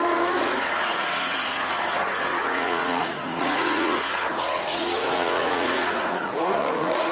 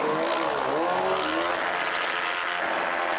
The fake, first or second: first